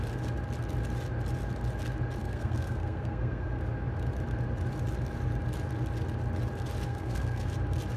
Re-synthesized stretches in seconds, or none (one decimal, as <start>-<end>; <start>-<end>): 2.2-3.6; 6.9-7.5